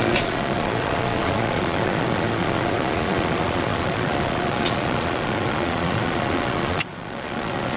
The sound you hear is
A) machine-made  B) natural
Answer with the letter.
A